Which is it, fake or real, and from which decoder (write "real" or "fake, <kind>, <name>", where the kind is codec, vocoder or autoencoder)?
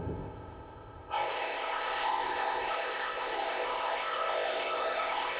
fake, codec, ZipCodec